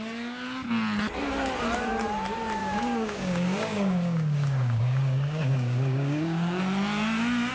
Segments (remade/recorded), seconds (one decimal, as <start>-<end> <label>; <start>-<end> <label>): 0.0-2.6 recorded; 2.6-6.6 remade; 6.6-7.5 recorded